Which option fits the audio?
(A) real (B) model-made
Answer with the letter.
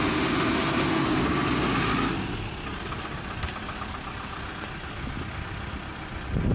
A